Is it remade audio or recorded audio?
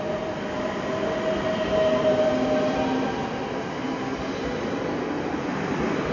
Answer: recorded